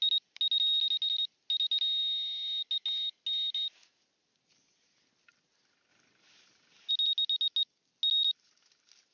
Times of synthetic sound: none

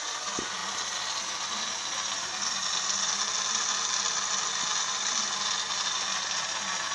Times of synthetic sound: none

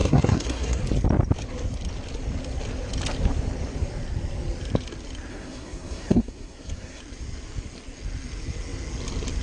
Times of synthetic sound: 0.0-0.8; 5.3-7.0